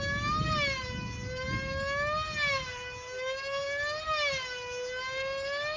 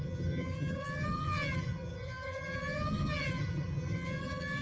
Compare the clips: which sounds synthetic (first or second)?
second